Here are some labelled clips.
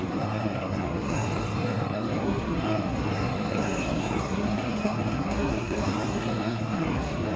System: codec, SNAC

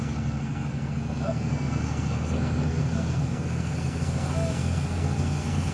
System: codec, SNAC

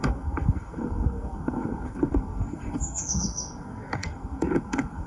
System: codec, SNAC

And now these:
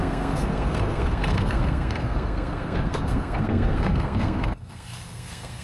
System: codec, SNAC